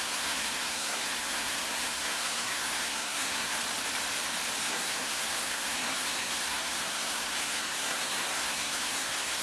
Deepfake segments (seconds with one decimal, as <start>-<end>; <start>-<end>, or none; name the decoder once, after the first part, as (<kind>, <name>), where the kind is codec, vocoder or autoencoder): 0.0-3.6 (codec, SNAC); 4.6-9.4